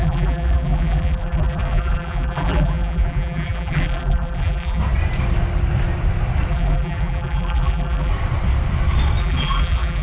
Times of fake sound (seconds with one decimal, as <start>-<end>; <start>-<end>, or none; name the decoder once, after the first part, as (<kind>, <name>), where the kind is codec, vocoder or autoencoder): 0.0-4.8 (vocoder, BigVGAN v2); 6.5-8.1; 9.2-10.0